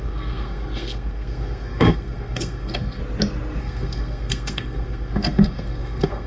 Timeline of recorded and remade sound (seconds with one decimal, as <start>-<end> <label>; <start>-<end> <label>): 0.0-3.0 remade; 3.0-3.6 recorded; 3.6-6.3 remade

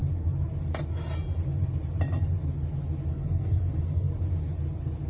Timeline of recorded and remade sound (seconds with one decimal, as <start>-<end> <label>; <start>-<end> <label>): 0.0-3.1 recorded; 3.1-4.1 remade; 4.1-5.1 recorded

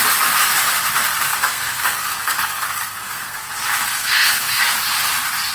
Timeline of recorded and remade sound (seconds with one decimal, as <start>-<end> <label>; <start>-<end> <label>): 0.0-1.3 recorded; 1.3-4.6 remade; 4.6-5.5 recorded